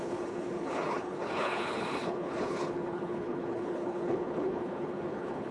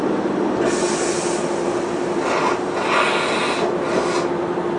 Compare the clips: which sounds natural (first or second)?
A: second